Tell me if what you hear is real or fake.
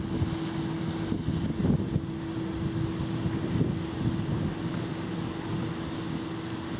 real